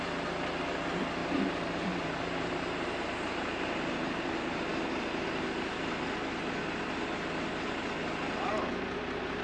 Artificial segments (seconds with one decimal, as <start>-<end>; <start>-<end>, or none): 1.2-3.3